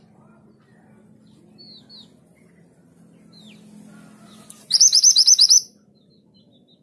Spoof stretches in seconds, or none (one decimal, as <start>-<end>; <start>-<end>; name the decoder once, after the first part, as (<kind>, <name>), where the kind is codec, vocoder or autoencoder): 4.3-5.3 (vocoder, BigVGAN v2)